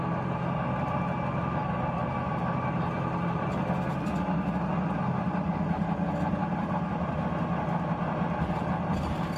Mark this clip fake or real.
real